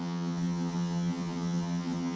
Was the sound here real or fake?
fake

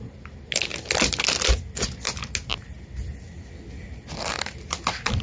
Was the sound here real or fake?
real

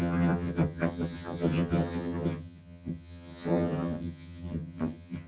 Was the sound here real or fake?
fake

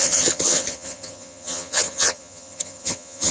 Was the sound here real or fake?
fake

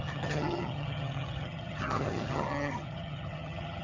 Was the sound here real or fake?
fake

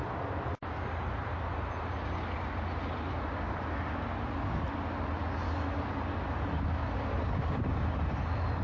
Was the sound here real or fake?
real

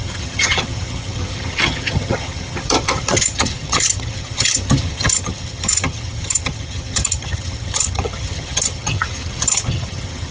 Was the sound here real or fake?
fake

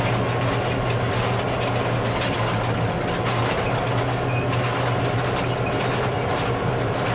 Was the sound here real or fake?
real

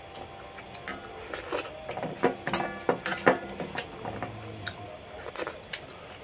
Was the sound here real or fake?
real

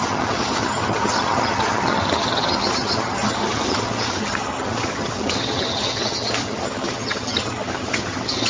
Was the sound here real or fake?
fake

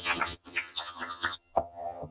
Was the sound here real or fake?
fake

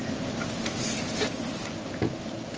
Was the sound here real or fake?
real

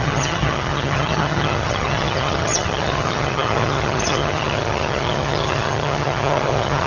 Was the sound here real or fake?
fake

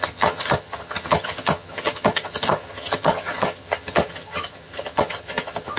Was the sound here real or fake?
fake